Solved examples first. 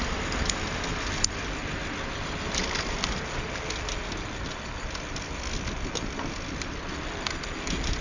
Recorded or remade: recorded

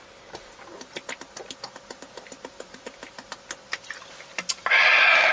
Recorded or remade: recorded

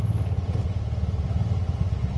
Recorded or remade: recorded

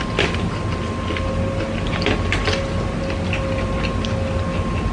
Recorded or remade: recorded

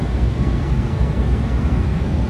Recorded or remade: remade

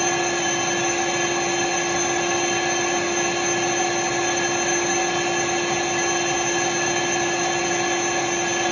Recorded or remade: recorded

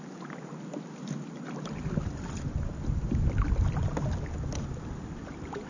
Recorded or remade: recorded